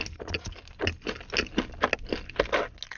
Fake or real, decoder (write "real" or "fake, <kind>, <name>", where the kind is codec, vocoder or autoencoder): real